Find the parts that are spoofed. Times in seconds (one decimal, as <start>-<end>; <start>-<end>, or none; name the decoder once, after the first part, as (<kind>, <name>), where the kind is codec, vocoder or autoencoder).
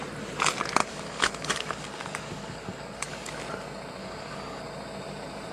0.8-3.3 (codec, DAC); 4.0-4.6